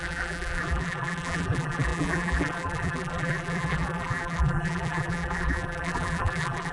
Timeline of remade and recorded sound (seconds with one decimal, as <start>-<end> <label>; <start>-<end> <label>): 0.0-6.7 remade